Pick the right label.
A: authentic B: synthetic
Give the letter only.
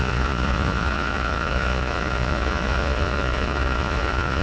B